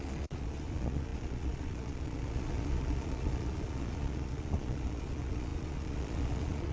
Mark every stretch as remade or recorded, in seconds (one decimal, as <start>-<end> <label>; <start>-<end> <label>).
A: 0.0-6.7 remade